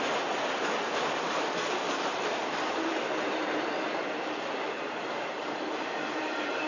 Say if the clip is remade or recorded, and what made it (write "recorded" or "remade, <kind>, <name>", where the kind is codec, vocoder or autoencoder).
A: remade, vocoder, BigVGAN v2